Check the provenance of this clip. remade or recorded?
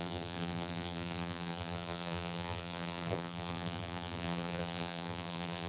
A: remade